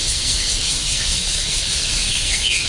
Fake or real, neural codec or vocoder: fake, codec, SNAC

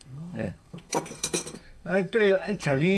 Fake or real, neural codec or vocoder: fake, codec, SNAC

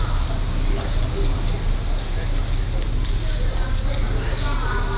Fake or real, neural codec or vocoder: real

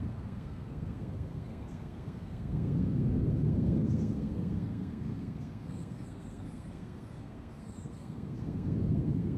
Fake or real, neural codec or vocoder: fake, codec, SNAC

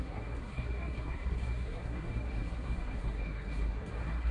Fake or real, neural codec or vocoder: fake, codec, SNAC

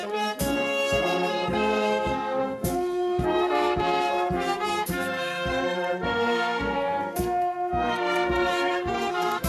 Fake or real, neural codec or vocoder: fake, codec, SNAC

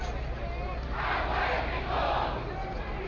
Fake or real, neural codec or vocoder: real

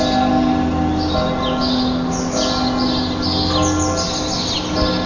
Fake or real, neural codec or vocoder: real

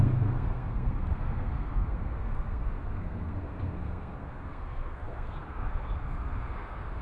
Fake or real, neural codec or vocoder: fake, codec, SNAC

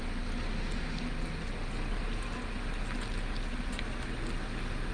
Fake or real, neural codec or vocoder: real